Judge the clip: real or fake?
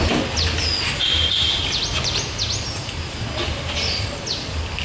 real